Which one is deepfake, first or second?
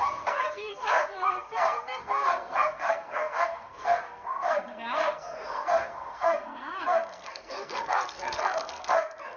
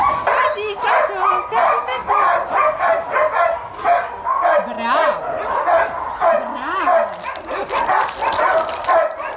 first